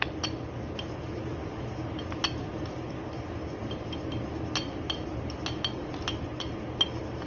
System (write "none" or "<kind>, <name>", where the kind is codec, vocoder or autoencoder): none